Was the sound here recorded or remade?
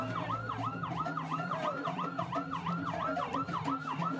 recorded